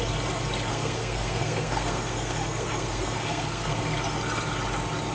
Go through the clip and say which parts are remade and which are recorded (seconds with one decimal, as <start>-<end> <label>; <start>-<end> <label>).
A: 0.0-0.7 recorded; 0.7-3.8 remade; 3.8-5.1 recorded